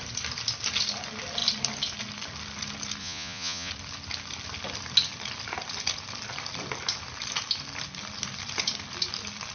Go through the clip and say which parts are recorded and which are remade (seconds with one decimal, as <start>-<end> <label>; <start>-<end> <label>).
0.0-3.0 recorded; 3.0-3.7 remade; 3.7-9.5 recorded